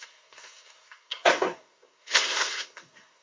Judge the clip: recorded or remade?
remade